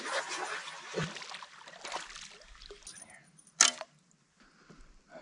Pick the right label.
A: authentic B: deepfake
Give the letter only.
A